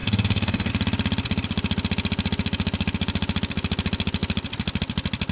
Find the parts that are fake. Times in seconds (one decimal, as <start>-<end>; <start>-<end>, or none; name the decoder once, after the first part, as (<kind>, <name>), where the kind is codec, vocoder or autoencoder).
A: 0.0-0.7 (codec, DAC)